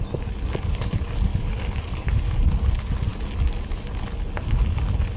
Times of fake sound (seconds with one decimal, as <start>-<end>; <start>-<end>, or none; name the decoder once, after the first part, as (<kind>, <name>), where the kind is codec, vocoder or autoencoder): 1.3-2.2 (codec, DAC)